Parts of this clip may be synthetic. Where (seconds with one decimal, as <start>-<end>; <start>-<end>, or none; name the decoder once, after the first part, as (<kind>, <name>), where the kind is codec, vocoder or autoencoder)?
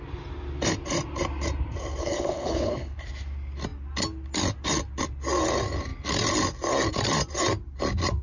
2.0-3.0 (codec, HILCodec)